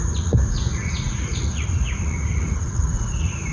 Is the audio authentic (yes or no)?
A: no